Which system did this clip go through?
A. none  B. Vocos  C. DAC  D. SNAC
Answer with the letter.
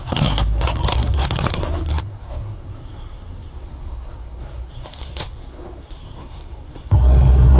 D